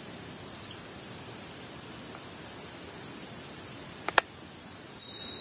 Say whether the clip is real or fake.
real